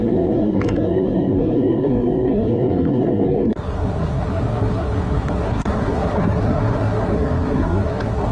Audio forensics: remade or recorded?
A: remade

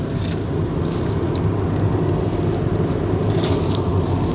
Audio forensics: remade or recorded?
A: recorded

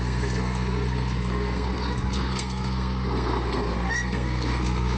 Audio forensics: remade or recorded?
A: remade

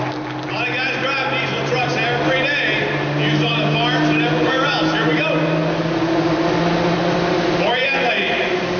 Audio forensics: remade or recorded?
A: recorded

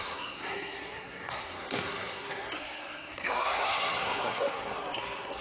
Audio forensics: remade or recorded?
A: remade